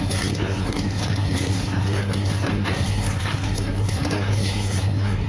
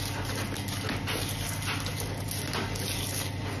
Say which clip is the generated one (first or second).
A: first